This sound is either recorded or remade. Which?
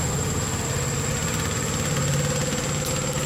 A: recorded